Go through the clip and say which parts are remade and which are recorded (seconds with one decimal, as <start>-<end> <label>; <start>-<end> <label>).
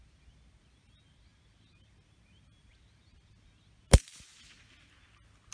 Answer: 0.0-5.5 recorded